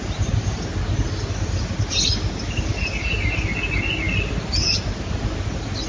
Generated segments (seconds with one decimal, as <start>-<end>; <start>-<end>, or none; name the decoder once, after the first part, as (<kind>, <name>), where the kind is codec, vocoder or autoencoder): none